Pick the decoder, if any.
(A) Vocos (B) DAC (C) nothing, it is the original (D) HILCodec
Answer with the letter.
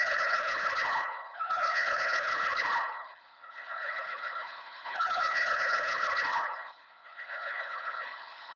D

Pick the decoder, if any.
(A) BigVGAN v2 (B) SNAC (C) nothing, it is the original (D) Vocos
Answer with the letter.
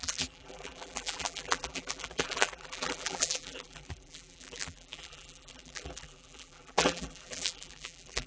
A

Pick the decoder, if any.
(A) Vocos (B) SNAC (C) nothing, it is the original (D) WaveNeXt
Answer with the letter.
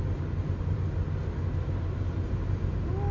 C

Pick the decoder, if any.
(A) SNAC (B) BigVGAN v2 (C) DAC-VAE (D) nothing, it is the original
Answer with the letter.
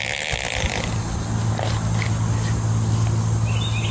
D